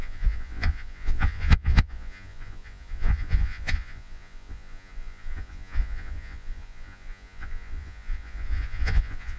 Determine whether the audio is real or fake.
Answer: fake